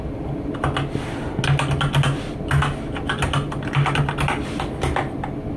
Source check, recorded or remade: recorded